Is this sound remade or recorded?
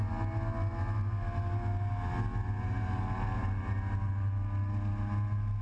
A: recorded